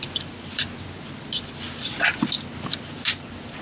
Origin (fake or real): real